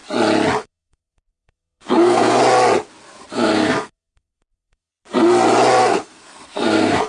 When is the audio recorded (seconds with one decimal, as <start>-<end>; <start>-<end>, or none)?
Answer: 0.0-0.6; 2.4-3.3; 4.9-5.8